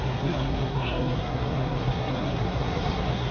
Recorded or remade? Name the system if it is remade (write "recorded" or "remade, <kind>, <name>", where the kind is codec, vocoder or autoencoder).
remade, codec, SNAC